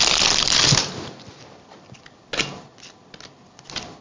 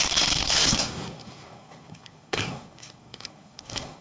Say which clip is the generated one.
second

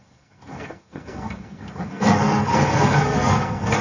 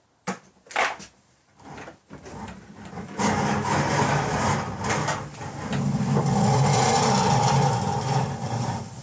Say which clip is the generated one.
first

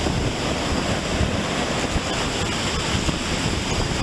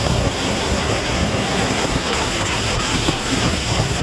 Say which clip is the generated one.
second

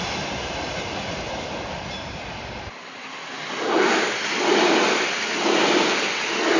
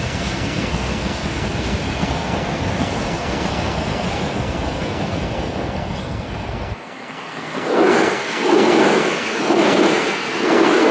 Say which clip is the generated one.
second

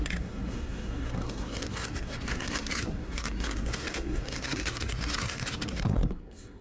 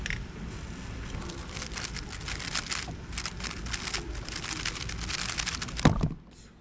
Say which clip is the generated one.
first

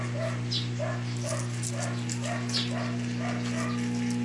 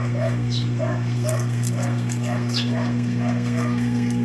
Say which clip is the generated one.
second